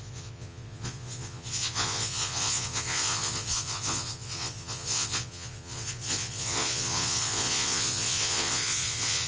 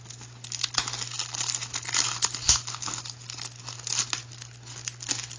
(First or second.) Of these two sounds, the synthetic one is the first